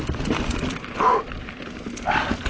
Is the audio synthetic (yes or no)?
no